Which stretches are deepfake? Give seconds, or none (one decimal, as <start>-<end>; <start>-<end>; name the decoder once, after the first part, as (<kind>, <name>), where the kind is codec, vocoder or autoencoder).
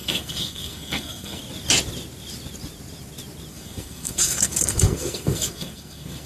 0.0-1.4 (codec, SNAC); 3.5-6.3